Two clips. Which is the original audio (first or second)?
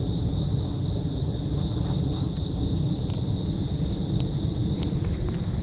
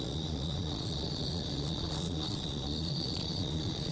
first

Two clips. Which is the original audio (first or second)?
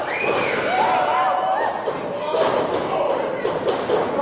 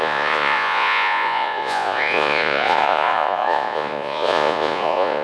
first